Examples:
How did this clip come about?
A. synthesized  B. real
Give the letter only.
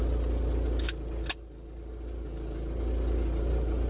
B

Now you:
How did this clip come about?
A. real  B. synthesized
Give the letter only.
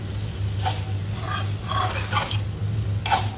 A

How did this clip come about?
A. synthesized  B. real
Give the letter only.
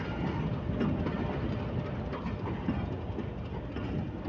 B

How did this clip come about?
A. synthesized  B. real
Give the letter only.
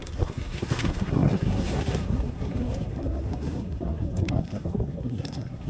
A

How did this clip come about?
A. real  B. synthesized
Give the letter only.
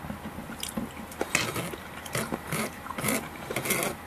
A